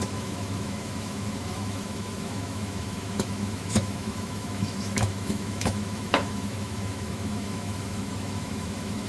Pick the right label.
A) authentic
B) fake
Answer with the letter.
B